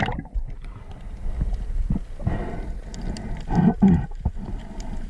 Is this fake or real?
fake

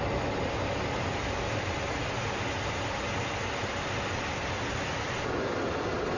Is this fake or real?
real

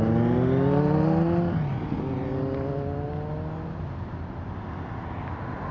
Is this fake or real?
real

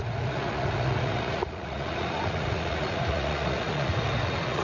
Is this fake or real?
fake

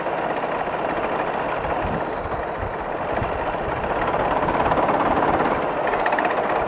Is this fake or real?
real